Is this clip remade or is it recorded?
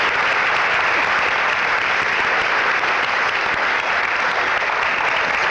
recorded